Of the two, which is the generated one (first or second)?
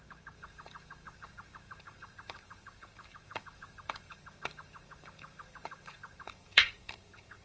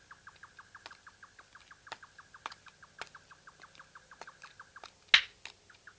first